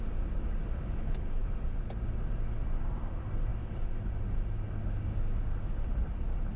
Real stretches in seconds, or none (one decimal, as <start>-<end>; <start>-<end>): 0.0-6.6